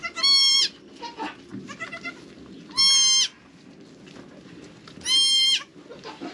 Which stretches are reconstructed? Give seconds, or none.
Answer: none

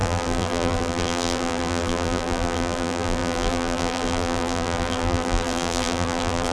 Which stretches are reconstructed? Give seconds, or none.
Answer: 0.0-6.5 (vocoder, BigVGAN v2)

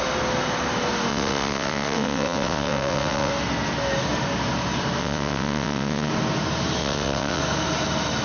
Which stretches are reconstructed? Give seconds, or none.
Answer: 1.1-3.3 (vocoder, WaveNeXt); 5.0-6.1; 6.8-7.4

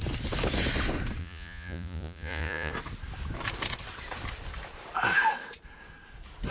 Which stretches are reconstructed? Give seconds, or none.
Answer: 1.2-2.7 (vocoder, Vocos)

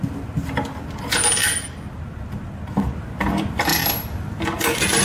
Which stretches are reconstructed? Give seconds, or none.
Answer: 1.4-2.0 (vocoder, BigVGAN v2); 3.7-5.0